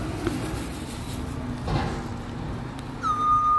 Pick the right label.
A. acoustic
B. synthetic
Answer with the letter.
A